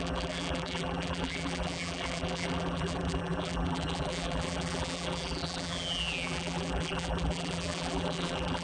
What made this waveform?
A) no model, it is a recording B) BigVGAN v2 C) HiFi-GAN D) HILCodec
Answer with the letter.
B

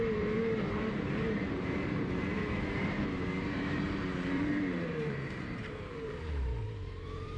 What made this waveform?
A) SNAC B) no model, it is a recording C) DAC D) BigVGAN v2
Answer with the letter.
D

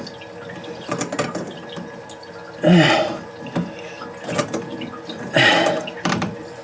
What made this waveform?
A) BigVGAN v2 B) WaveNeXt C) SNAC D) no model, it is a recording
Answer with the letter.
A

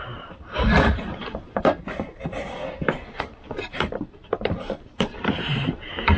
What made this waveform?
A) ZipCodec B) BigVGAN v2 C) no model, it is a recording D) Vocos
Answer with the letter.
B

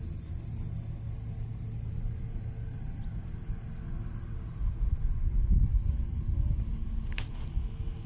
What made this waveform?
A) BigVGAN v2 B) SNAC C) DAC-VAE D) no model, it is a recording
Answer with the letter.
D